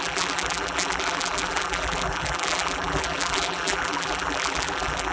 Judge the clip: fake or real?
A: fake